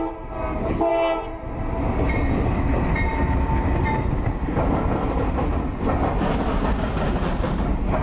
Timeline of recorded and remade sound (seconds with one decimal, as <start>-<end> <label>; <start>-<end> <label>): 0.0-8.0 recorded